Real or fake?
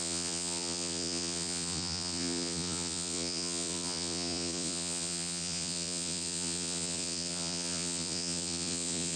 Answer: fake